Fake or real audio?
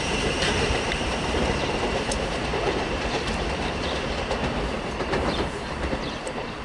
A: fake